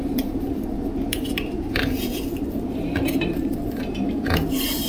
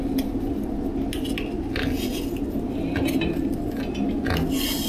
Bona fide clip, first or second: second